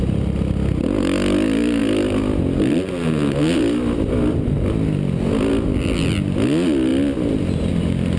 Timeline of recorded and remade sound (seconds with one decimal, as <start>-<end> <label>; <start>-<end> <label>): 0.0-8.2 recorded